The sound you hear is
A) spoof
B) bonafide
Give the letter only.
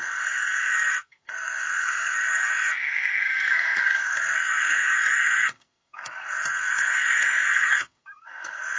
A